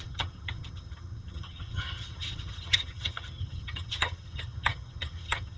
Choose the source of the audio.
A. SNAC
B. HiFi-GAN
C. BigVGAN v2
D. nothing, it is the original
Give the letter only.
B